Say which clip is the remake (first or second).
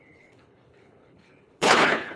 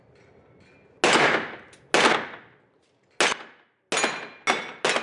first